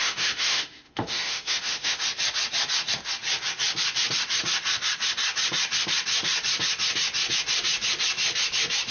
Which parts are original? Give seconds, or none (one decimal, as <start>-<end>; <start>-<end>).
2.0-8.9

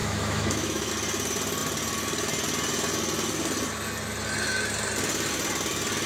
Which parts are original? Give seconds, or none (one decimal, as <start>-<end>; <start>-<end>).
0.9-6.1

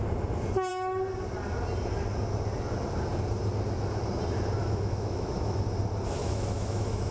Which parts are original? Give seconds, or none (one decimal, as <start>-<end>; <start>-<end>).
0.0-4.6; 5.6-6.2

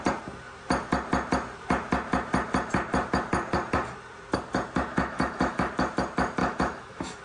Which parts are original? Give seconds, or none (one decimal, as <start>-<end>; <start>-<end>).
0.0-4.9; 5.7-6.4

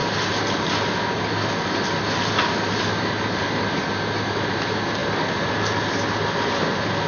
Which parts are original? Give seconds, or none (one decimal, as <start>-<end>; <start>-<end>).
0.0-7.1